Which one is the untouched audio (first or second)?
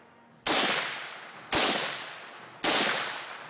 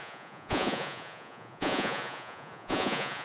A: first